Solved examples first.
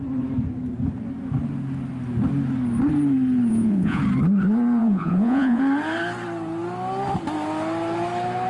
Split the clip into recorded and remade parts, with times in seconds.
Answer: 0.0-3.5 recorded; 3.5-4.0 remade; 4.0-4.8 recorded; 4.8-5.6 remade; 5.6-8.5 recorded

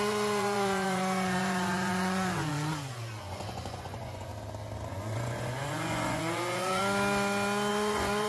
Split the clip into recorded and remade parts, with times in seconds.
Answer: 0.0-4.3 remade; 4.3-4.9 recorded; 4.9-6.8 remade; 6.8-7.7 recorded; 7.7-8.3 remade

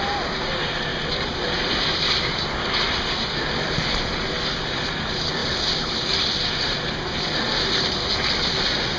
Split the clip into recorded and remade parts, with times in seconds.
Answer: 0.0-0.9 recorded; 0.9-2.1 remade; 2.1-9.0 recorded

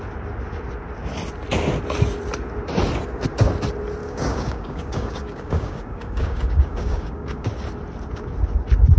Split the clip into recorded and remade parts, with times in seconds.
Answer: 0.0-4.0 recorded; 4.0-7.5 remade; 7.5-9.0 recorded

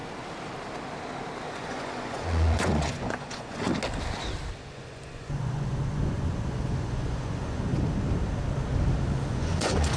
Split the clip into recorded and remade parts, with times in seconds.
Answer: 0.0-1.5 recorded; 1.5-3.7 remade; 3.7-4.7 recorded; 4.7-7.7 remade; 7.7-9.3 recorded; 9.3-10.0 remade

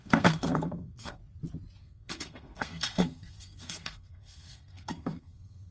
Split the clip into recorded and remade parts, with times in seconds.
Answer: 0.0-1.2 remade; 1.2-1.8 recorded; 1.8-5.7 remade